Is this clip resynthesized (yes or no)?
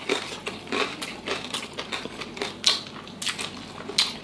no